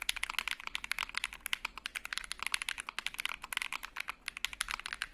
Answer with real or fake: real